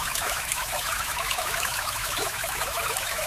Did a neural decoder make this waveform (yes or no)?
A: yes